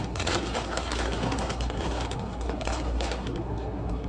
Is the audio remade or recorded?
remade